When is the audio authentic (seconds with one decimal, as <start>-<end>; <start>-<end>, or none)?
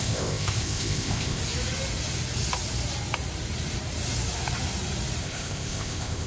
1.4-5.2